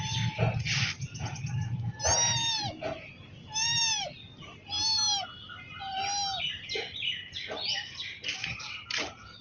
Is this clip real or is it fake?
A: real